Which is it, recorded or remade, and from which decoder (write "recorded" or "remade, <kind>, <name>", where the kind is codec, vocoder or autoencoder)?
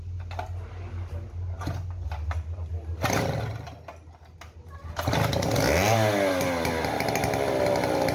recorded